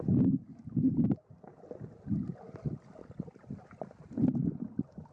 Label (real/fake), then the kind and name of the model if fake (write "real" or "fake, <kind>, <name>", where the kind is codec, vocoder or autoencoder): real